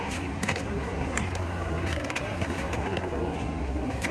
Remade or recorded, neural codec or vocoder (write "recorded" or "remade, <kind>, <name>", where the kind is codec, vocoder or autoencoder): remade, codec, SNAC